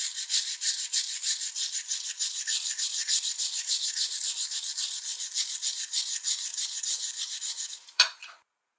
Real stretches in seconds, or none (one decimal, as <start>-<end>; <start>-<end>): 0.0-6.5